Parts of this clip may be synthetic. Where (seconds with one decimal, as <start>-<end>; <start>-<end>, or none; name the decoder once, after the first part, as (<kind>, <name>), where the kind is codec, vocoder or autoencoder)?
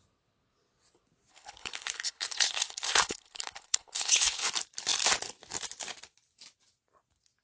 1.3-4.5 (codec, HILCodec)